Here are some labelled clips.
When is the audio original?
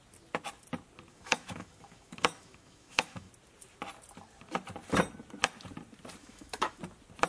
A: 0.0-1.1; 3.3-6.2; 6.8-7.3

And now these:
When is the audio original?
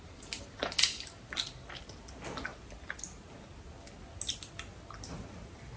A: 0.0-5.8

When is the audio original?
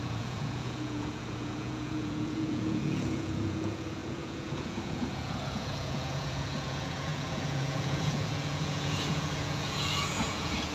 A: none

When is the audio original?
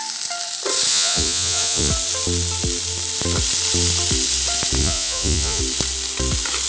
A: 0.0-0.9; 1.9-4.8; 5.6-6.7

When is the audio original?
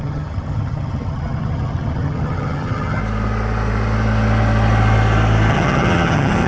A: 3.0-5.5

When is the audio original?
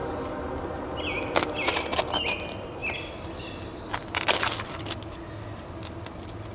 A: 1.1-6.5